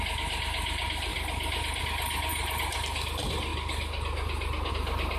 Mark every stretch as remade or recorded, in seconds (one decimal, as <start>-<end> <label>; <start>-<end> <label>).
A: 0.0-5.2 recorded